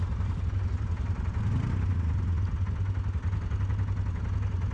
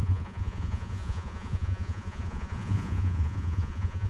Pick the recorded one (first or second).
first